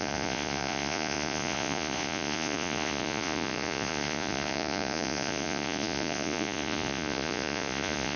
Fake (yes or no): yes